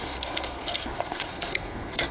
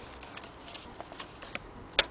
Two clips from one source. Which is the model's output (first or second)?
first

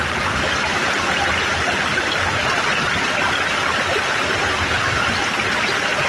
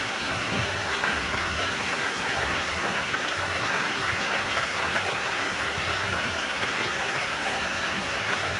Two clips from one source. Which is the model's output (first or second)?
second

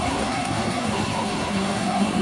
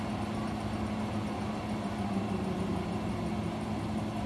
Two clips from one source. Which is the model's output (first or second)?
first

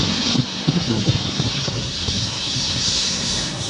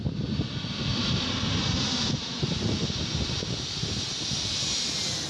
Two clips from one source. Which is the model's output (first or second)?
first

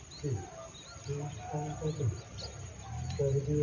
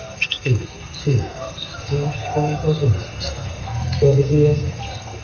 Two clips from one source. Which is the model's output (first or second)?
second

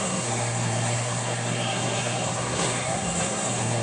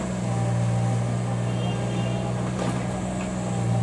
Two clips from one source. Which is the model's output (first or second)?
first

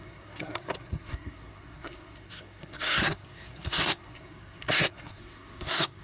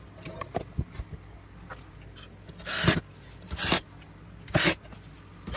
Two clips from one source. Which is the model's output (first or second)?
first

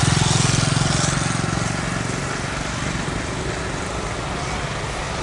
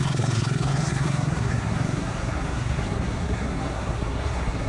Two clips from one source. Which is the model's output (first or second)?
second